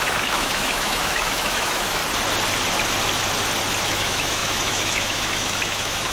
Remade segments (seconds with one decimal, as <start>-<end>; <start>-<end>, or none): 0.0-2.0; 3.8-6.1